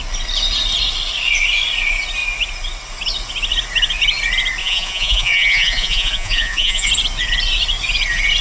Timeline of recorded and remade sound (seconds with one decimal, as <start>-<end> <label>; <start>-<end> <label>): 0.0-4.6 recorded; 4.6-6.9 remade; 6.9-8.4 recorded